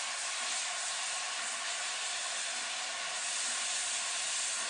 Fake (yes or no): no